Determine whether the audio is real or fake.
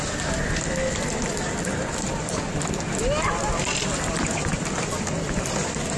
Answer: real